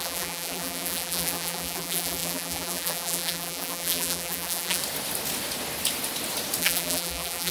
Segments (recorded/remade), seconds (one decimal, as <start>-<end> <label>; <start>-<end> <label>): 0.0-4.8 remade; 4.8-6.6 recorded; 6.6-7.5 remade

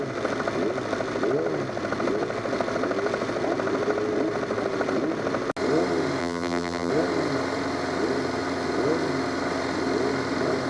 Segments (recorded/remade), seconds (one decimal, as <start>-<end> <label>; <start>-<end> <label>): 0.0-6.2 recorded; 6.2-6.9 remade; 6.9-10.7 recorded

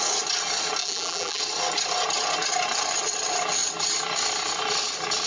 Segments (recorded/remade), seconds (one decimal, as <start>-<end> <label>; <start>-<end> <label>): 0.0-0.8 recorded; 0.8-1.4 remade; 1.4-5.3 recorded

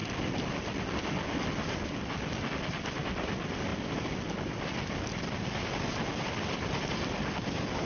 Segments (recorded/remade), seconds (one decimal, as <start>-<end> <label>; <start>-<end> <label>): 0.0-2.0 recorded; 2.0-7.9 remade

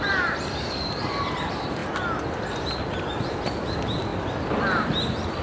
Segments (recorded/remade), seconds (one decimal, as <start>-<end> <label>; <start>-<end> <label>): 0.0-1.8 remade; 1.8-3.4 recorded; 3.4-4.1 remade; 4.1-4.8 recorded; 4.8-5.4 remade

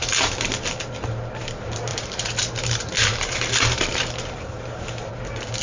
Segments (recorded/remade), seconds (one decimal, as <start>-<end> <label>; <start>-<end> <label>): 0.0-0.5 remade; 0.5-1.9 recorded; 1.9-5.1 remade; 5.1-5.6 recorded

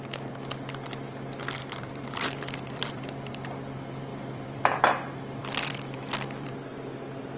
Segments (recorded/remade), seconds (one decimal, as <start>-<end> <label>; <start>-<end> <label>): 0.0-1.6 recorded; 1.6-3.3 remade; 3.3-4.1 recorded; 4.1-4.8 remade; 4.8-5.4 recorded; 5.4-6.6 remade; 6.6-7.4 recorded

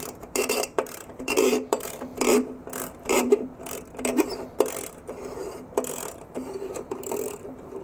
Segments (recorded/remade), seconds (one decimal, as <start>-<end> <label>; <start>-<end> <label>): 0.0-2.1 remade; 2.1-3.1 recorded; 3.1-3.5 remade; 3.5-5.9 recorded; 5.9-7.8 remade